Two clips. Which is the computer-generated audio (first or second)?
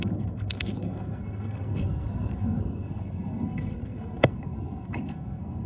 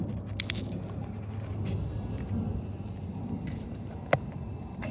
first